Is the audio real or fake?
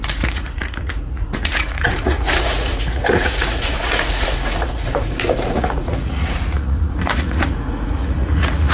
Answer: fake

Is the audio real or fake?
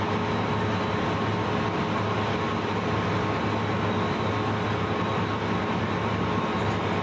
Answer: real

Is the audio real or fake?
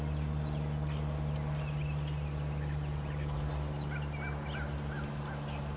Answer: real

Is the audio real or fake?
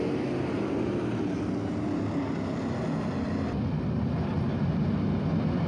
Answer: real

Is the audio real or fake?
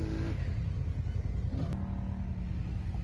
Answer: real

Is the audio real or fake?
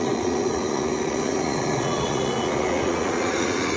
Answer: fake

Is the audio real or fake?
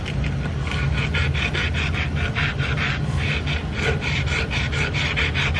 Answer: real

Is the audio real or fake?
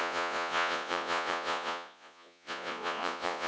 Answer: fake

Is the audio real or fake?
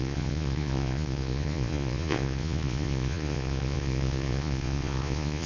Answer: fake